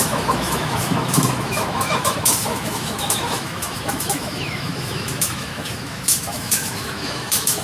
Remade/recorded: remade